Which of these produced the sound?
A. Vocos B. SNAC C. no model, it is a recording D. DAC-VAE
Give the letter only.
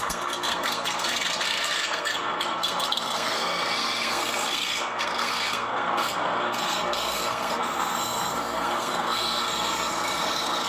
B